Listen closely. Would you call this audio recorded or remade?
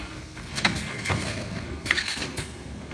remade